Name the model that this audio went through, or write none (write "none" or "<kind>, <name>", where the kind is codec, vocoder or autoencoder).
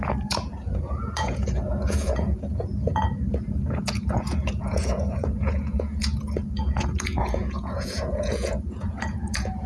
vocoder, Vocos